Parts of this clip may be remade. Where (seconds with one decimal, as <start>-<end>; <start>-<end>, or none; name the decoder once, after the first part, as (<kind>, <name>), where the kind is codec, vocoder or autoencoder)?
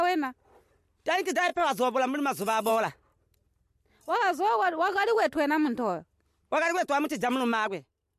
none